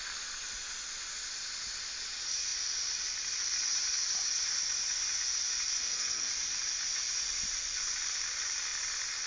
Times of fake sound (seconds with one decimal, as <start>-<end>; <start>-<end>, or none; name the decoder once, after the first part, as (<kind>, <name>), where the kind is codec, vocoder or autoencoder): 5.8-6.3 (codec, SNAC)